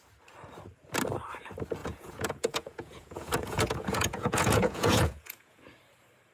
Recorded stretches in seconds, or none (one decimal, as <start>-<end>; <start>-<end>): 0.0-1.8; 5.6-6.3